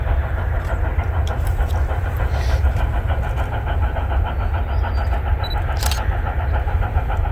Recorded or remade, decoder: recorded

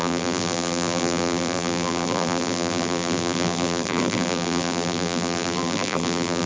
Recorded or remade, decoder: remade, vocoder, BigVGAN v2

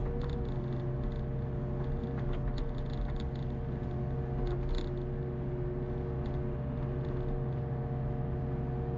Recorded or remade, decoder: recorded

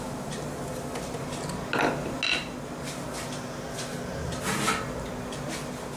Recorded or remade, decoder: recorded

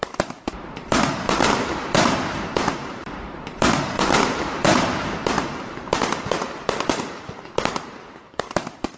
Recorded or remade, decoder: remade, vocoder, BigVGAN v2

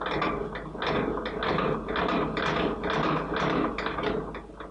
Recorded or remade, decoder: recorded